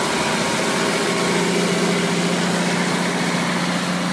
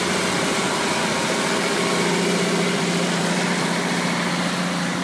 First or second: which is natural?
first